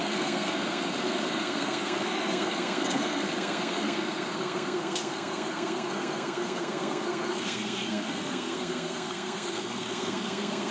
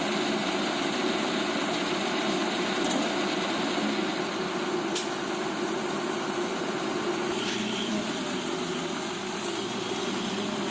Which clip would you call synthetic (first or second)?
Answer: first